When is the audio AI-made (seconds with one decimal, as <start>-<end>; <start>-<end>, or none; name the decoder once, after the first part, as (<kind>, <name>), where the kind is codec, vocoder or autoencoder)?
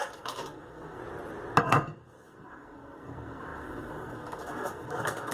0.0-1.0 (codec, SNAC); 1.6-5.3